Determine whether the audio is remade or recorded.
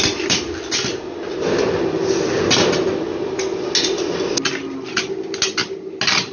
recorded